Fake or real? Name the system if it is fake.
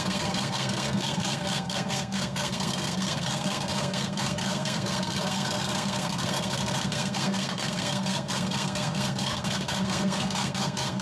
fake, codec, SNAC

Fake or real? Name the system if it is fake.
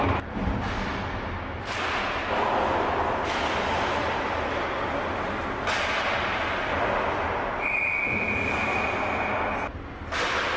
real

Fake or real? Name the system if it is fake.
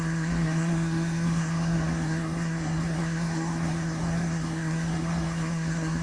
fake, codec, SNAC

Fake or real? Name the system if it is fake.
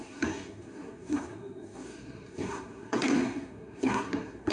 fake, codec, SNAC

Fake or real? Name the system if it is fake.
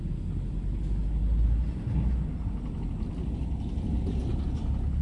real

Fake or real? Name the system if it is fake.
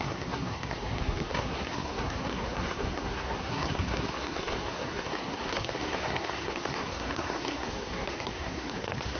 fake, codec, SNAC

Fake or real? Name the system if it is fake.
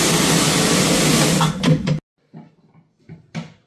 real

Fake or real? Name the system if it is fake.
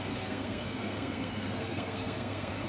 fake, codec, SNAC